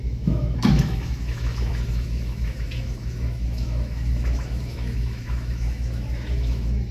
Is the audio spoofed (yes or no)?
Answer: yes